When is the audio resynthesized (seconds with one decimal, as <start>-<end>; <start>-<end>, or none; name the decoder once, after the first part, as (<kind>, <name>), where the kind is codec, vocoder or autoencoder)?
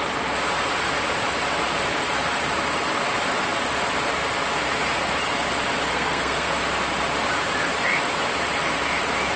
5.9-6.5 (codec, SNAC)